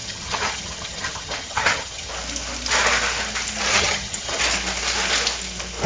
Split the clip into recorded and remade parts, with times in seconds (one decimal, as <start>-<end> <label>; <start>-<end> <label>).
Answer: 0.0-2.1 remade; 2.1-3.7 recorded; 3.7-4.4 remade; 4.4-5.9 recorded